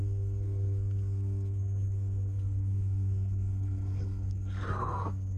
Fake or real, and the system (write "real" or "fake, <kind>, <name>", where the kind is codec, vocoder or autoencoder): fake, codec, SNAC